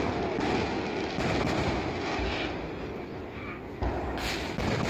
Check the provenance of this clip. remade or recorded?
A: recorded